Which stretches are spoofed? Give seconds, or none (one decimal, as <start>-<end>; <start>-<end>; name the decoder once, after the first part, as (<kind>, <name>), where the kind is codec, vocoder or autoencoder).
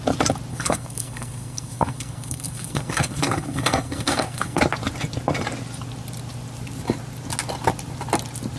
0.5-4.6 (codec, SNAC)